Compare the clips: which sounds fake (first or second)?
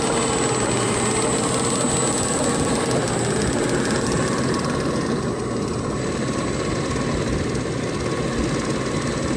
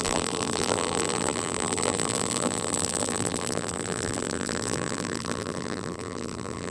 second